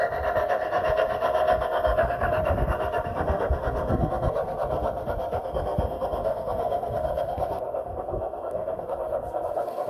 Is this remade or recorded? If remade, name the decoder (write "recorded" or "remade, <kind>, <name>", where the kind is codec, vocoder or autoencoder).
remade, codec, SNAC